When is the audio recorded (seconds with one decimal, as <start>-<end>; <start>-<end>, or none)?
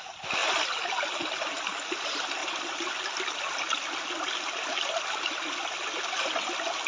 0.0-2.4; 2.9-6.9